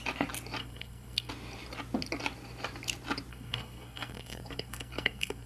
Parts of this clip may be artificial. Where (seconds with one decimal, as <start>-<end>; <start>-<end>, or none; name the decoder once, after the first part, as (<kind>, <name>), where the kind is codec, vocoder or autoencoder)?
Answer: 0.6-1.3 (codec, SNAC); 3.3-5.5